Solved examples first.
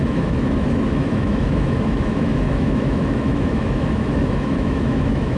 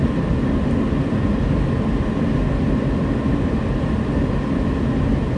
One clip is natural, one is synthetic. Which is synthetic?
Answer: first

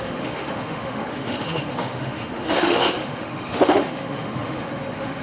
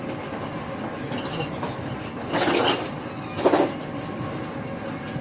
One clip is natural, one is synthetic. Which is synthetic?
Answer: first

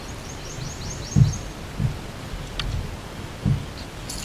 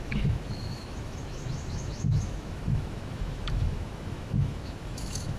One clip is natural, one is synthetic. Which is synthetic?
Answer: second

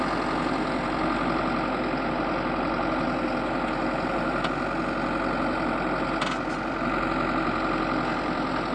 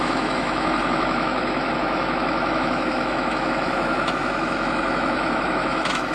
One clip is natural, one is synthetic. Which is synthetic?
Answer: second